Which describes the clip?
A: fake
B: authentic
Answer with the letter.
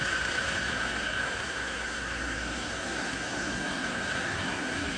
A